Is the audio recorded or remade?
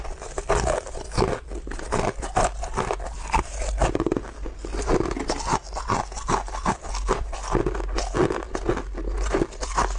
recorded